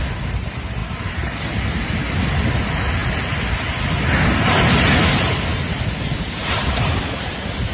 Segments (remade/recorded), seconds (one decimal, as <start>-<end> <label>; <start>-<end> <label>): 0.0-5.5 recorded; 5.5-7.7 remade